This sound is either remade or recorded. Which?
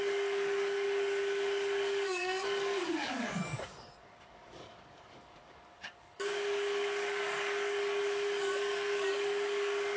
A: remade